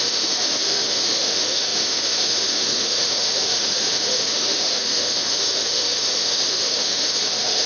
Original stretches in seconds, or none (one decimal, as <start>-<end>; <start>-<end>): none